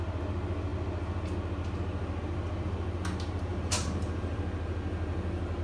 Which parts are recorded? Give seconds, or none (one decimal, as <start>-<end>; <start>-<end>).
0.0-3.5; 4.4-5.6